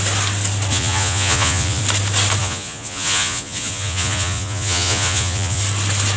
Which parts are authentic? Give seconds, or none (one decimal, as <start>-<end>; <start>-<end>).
0.0-0.7; 1.8-2.4; 5.6-6.2

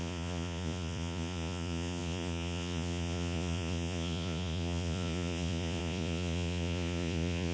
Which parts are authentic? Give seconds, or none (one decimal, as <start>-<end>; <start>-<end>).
none

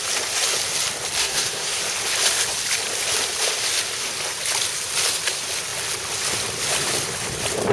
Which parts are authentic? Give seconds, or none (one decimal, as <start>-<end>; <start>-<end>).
0.0-1.2; 1.8-7.7

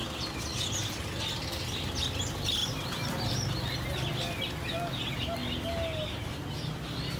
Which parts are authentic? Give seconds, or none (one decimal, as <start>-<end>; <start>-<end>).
0.0-2.6; 3.5-7.2

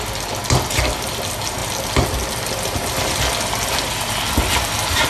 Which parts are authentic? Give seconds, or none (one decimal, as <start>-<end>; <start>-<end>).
0.0-5.1

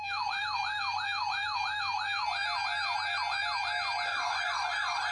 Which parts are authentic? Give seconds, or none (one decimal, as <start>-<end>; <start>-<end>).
0.0-4.1